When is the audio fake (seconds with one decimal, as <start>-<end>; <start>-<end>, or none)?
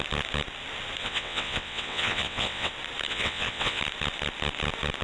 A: 1.0-2.7; 3.1-3.8